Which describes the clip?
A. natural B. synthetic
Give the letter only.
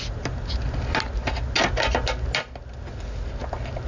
A